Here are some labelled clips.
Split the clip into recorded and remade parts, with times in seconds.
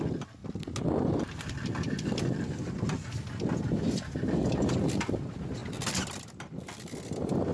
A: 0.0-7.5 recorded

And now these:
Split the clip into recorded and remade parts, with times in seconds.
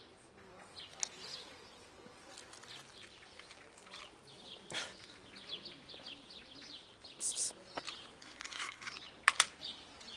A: 0.0-8.2 recorded; 8.2-8.9 remade; 8.9-10.2 recorded